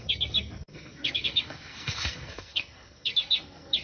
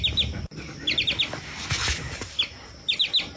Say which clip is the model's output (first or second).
first